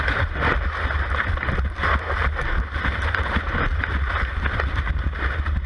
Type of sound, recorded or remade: recorded